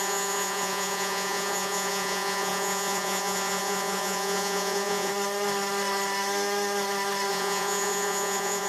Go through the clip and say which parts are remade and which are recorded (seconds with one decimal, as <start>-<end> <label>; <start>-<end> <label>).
0.0-5.1 remade; 5.1-7.3 recorded; 7.3-8.7 remade

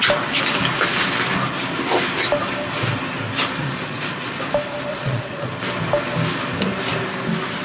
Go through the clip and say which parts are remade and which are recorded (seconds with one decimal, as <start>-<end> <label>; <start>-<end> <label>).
0.0-3.6 recorded; 3.6-4.4 remade; 4.4-4.9 recorded; 4.9-5.5 remade; 5.5-7.6 recorded

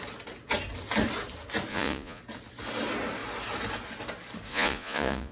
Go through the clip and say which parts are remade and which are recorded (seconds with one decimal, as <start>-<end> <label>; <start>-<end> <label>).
0.0-1.7 recorded; 1.7-2.2 remade; 2.2-4.5 recorded; 4.5-5.3 remade

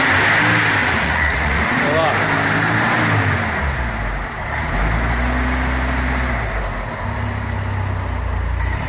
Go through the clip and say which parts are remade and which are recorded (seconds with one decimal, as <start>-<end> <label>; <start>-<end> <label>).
0.0-0.8 recorded; 0.8-1.6 remade; 1.6-8.9 recorded